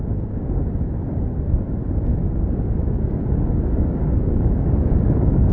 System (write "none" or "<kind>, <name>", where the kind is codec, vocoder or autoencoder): codec, DAC